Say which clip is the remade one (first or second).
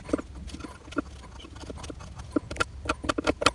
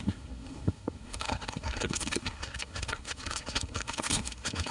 second